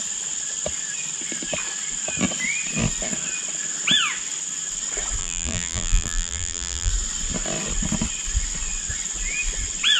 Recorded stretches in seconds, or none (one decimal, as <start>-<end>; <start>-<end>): 0.0-5.2; 6.9-10.0